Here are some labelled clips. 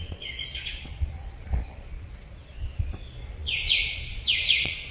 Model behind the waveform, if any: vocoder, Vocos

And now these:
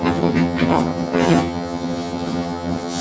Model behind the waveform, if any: vocoder, HiFi-GAN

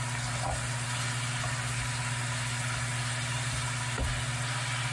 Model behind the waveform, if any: none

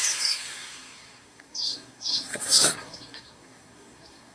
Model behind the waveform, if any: codec, SNAC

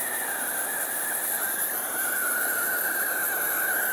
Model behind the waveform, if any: none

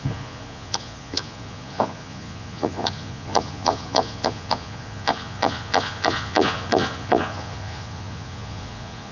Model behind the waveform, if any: vocoder, Vocos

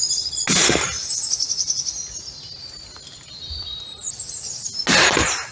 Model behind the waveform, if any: none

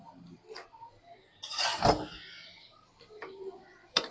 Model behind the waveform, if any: none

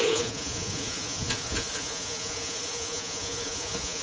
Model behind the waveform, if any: vocoder, Vocos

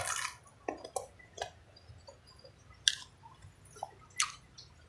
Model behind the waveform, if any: none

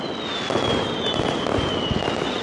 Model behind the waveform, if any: none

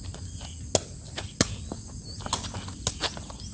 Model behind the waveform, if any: none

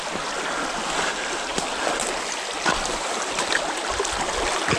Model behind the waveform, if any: none